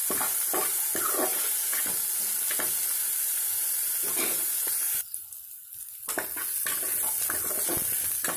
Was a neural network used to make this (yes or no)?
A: no